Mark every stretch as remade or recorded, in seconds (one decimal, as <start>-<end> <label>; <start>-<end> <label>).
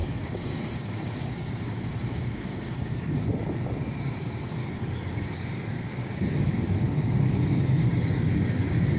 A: 0.0-3.2 remade; 3.2-4.0 recorded; 4.0-9.0 remade